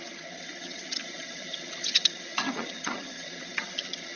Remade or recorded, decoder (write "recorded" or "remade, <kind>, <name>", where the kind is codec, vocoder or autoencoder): remade, vocoder, HiFi-GAN